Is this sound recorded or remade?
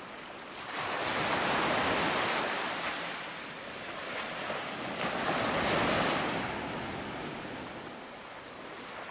recorded